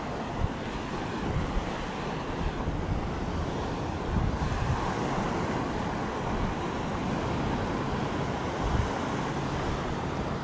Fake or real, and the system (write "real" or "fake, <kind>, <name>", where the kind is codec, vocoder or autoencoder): real